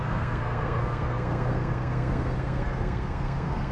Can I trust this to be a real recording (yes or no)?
no